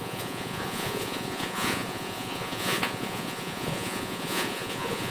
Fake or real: fake